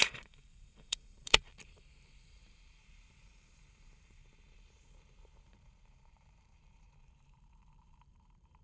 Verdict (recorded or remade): remade